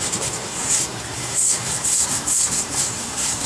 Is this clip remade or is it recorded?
remade